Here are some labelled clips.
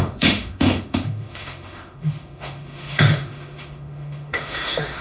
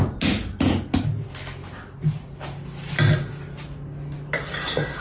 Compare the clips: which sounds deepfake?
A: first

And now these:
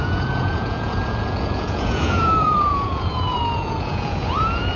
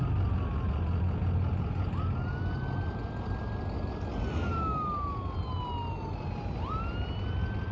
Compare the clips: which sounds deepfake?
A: first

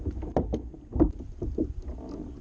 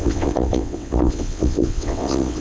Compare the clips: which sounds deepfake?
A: second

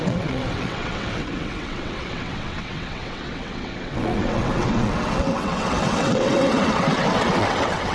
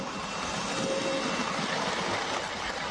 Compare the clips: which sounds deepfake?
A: first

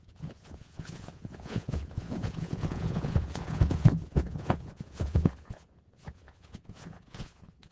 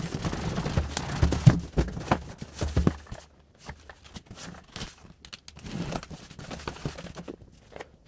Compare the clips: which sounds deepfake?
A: first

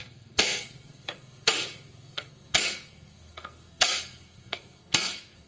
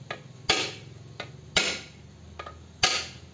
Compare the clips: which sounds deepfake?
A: first